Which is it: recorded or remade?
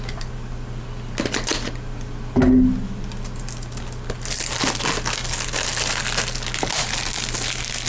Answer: recorded